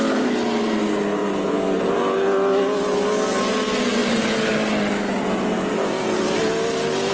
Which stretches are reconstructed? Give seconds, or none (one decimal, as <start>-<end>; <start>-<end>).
none